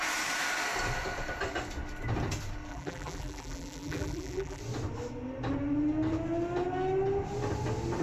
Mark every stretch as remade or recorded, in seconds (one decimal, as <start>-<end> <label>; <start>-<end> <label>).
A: 0.0-2.7 recorded; 2.7-4.6 remade; 4.6-8.0 recorded